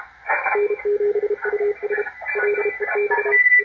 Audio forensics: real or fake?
real